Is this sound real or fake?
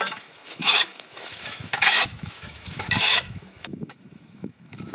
fake